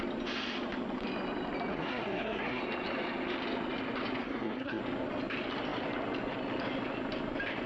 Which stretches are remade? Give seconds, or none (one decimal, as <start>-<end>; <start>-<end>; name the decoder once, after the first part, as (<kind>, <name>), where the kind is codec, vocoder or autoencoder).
1.7-2.6 (codec, SNAC); 4.2-4.8